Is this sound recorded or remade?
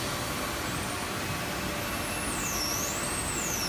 recorded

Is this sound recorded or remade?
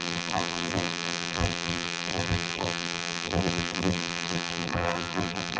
remade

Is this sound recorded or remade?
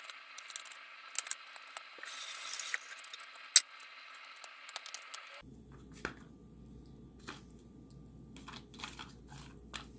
recorded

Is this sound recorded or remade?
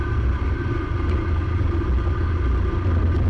recorded